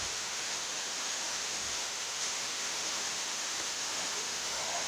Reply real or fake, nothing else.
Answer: fake